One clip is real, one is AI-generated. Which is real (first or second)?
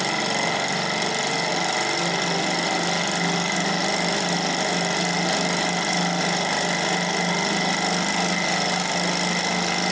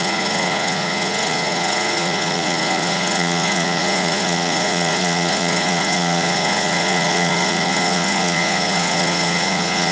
first